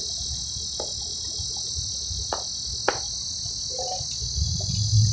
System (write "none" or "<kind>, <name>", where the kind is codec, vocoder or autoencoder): none